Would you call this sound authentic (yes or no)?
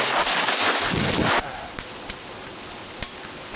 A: yes